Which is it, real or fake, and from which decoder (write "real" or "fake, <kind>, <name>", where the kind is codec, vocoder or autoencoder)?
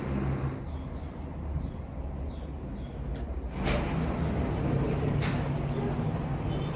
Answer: real